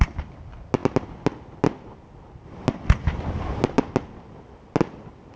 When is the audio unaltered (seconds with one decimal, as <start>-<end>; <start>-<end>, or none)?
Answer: 0.0-5.4